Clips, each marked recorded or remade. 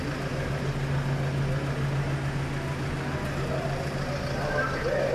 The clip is recorded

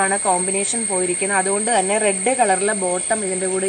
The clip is recorded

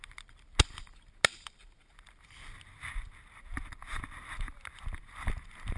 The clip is recorded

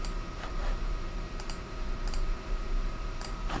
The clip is remade